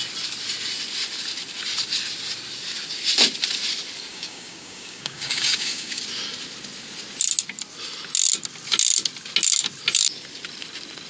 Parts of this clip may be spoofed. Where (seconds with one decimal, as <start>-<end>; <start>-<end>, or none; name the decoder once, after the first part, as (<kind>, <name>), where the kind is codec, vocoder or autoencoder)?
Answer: 4.1-6.0 (codec, DAC)